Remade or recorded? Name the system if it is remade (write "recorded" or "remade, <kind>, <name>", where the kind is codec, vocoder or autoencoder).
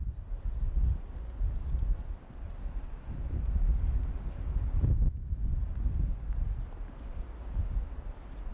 recorded